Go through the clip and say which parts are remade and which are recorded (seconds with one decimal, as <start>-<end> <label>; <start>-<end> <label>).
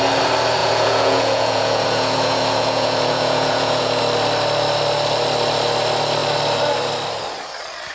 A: 0.0-0.6 recorded; 0.6-4.0 remade; 4.0-7.9 recorded